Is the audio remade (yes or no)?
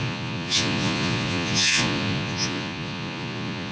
yes